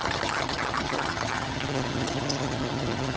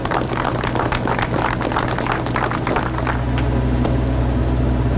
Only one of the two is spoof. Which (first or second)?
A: first